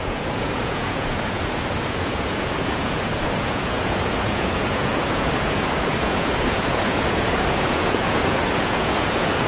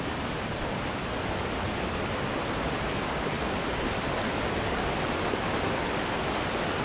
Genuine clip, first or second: second